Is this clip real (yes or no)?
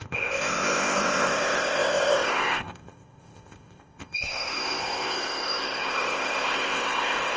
no